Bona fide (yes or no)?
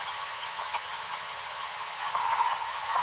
no